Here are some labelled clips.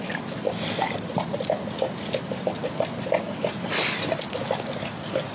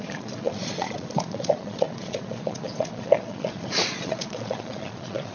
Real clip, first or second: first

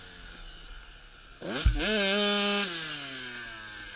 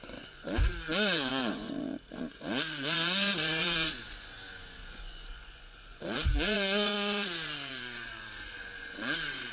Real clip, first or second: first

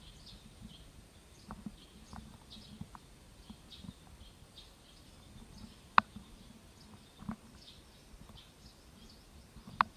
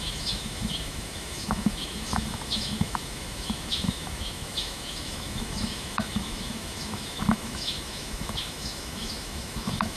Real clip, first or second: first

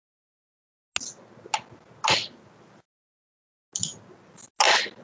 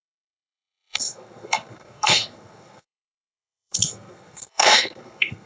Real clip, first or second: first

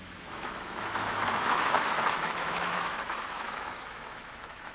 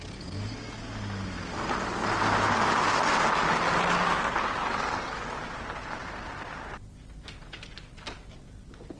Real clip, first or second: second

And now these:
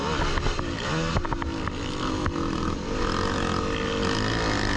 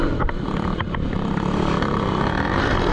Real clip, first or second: first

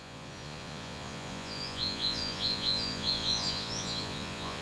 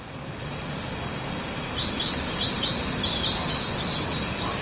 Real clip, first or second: second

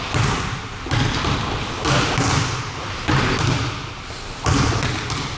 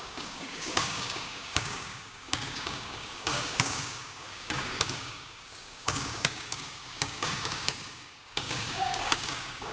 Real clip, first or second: first